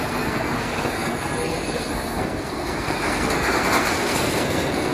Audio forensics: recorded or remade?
remade